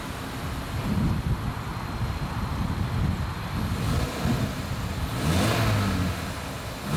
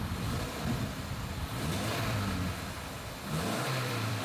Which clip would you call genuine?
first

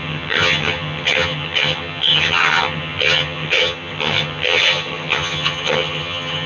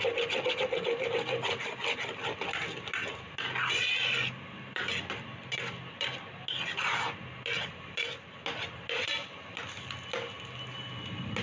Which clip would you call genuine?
second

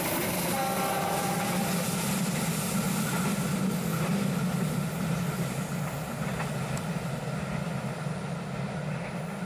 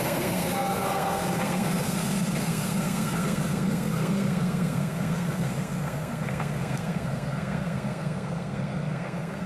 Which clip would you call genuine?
first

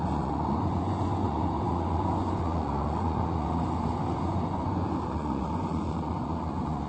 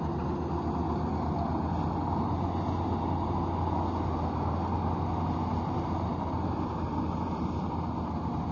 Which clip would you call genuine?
second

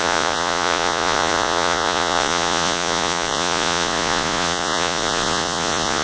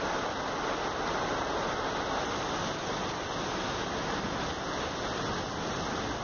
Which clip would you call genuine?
second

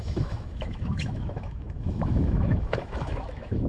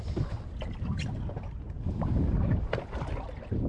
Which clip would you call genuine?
second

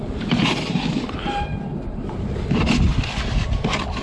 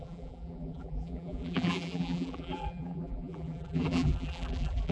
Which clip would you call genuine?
first